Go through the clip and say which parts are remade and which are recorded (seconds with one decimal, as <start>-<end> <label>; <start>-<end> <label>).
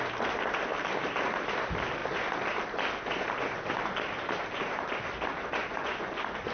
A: 0.0-5.6 recorded; 5.6-6.1 remade; 6.1-6.5 recorded